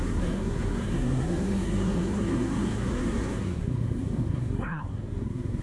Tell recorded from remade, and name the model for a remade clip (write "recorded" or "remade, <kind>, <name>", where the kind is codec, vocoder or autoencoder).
remade, codec, SNAC